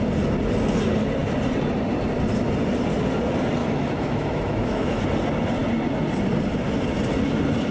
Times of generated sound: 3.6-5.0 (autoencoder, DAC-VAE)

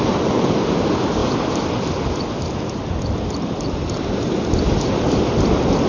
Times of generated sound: none

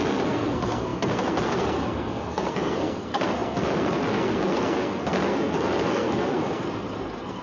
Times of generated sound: 0.0-7.4 (codec, SNAC)

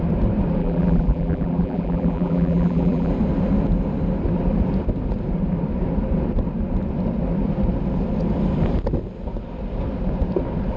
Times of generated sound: 0.6-3.1 (vocoder, BigVGAN v2)

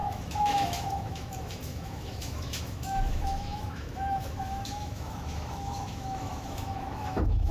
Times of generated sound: 0.0-7.5 (autoencoder, DAC-VAE)

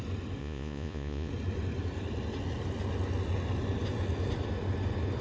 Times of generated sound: 0.4-1.3 (vocoder, Vocos)

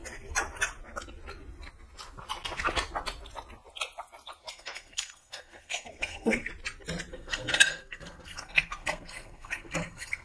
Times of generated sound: 4.5-6.5 (codec, SNAC); 7.1-10.2

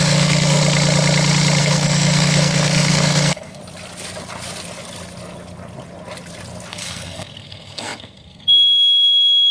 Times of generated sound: 0.0-0.6 (codec, SNAC); 1.6-3.6; 6.7-9.5